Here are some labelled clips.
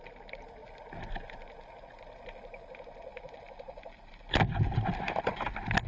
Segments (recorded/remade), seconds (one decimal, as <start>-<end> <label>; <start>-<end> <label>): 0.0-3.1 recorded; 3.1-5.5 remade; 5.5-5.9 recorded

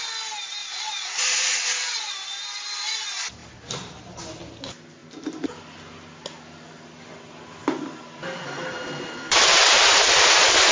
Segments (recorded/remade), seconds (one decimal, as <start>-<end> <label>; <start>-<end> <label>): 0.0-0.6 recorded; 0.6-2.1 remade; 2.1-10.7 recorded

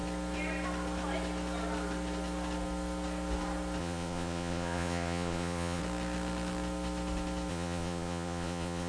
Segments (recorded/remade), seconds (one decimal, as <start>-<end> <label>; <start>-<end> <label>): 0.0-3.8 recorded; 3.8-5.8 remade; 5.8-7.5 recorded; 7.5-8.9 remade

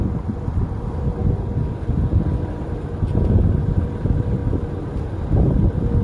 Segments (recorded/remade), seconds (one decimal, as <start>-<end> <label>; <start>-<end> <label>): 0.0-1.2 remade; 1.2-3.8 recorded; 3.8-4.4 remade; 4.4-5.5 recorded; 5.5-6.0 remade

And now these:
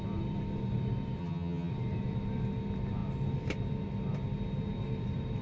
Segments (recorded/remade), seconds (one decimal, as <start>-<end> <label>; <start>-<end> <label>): 0.0-1.2 recorded; 1.2-1.7 remade; 1.7-5.4 recorded

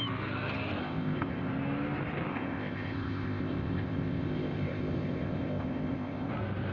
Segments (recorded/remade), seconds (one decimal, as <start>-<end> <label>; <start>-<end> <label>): 0.0-0.8 recorded; 0.8-1.5 remade; 1.5-2.3 recorded; 2.3-6.3 remade; 6.3-6.7 recorded